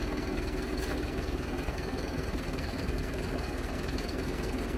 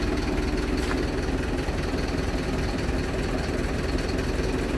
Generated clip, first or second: first